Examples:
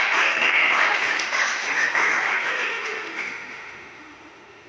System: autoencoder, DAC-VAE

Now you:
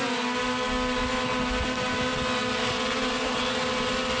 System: none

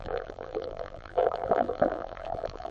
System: vocoder, BigVGAN v2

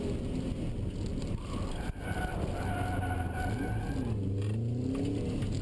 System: none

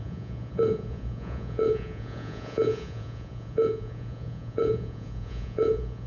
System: vocoder, Vocos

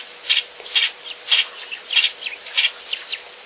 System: none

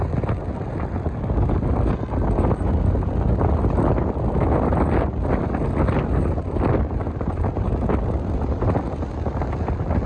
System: none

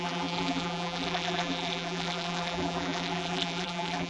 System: vocoder, BigVGAN v2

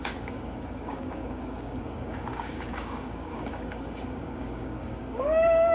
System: codec, DAC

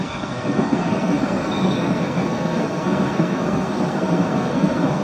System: codec, SNAC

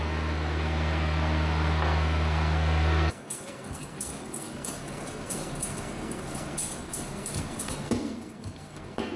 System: codec, SNAC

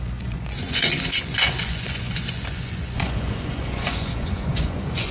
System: vocoder, Vocos